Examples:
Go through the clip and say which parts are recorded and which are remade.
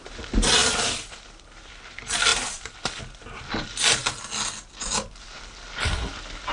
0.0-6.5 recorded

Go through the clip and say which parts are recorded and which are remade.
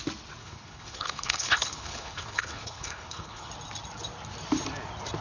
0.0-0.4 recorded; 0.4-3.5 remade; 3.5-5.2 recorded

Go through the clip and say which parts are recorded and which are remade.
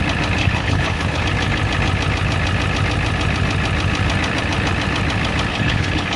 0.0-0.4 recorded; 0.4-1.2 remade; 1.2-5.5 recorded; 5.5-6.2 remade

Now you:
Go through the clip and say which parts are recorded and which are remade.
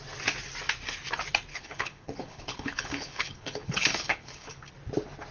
0.0-1.5 recorded; 1.5-4.7 remade; 4.7-5.3 recorded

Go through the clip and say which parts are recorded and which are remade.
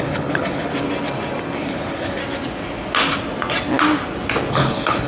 0.0-0.7 remade; 0.7-1.6 recorded; 1.6-2.2 remade; 2.2-4.5 recorded; 4.5-5.1 remade